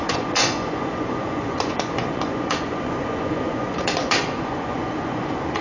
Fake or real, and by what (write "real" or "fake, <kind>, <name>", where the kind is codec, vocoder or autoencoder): fake, vocoder, Vocos